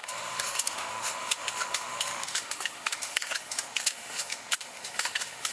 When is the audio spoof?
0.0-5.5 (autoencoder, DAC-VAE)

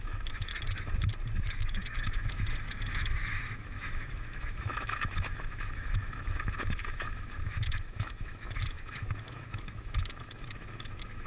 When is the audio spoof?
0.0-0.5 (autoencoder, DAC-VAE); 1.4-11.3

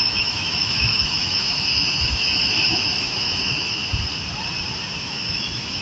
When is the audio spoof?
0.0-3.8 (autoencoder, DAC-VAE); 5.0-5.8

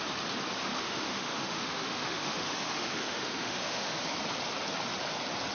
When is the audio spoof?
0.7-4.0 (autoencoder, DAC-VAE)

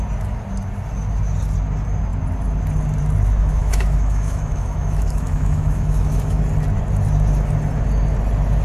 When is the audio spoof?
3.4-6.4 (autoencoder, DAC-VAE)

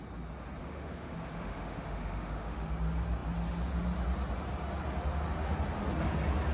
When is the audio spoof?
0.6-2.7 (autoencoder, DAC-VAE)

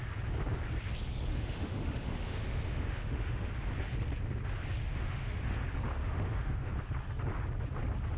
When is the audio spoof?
1.3-3.5 (autoencoder, DAC-VAE); 4.8-5.4; 6.0-6.7

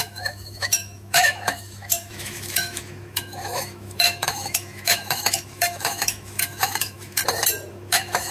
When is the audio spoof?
0.0-7.2 (autoencoder, DAC-VAE); 7.7-8.3